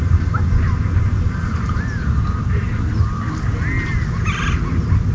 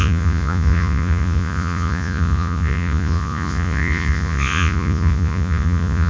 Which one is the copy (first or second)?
second